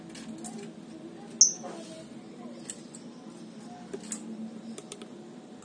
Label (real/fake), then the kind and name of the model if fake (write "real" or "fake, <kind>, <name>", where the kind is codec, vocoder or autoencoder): real